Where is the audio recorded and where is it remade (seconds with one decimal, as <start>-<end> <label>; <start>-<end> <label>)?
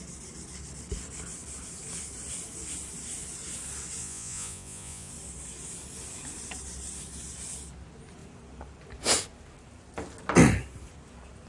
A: 0.0-4.0 recorded; 4.0-5.1 remade; 5.1-11.5 recorded